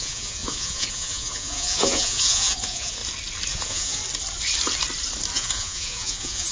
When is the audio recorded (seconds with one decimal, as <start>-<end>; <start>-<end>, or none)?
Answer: 3.0-3.5; 4.0-5.3